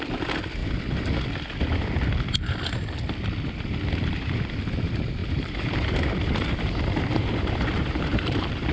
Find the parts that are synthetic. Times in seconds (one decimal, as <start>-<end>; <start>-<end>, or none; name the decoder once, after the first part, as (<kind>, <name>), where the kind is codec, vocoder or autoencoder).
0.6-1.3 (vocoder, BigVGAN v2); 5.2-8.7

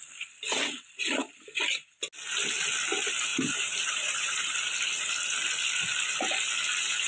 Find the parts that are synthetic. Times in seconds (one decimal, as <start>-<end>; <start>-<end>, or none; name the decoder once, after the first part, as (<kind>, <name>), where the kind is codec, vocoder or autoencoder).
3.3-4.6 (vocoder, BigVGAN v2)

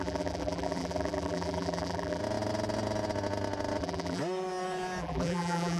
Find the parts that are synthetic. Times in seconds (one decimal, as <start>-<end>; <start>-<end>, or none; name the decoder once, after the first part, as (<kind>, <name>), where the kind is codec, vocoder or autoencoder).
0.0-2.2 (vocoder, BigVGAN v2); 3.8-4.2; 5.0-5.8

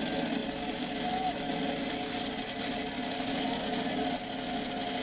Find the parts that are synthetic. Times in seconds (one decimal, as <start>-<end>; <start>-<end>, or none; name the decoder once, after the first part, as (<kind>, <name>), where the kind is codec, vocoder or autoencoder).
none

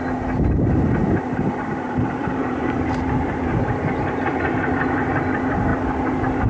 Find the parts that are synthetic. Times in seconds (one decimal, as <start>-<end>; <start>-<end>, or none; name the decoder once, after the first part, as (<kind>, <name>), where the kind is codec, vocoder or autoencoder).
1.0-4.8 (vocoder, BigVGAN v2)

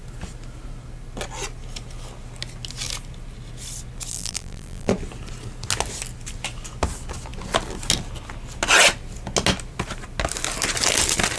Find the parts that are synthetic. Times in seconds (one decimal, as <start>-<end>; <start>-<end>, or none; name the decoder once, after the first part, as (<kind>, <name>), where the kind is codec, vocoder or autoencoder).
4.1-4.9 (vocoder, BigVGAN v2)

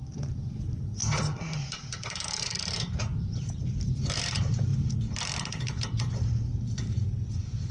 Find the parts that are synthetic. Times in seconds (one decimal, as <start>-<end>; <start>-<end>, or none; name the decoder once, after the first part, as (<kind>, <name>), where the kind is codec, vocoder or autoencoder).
0.0-1.0 (vocoder, BigVGAN v2); 1.7-4.7; 5.5-7.7